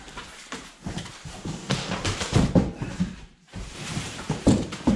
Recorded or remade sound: remade